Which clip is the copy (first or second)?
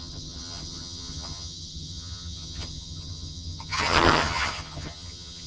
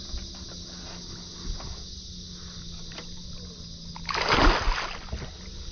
first